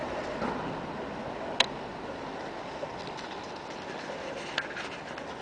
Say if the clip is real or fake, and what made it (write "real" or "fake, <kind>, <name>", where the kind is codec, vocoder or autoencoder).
real